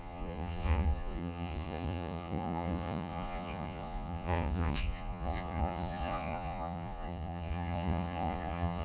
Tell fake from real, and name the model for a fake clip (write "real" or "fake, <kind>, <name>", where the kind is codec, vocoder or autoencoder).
fake, vocoder, Vocos